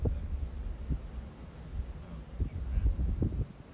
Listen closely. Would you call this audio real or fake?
real